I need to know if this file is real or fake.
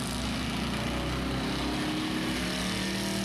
real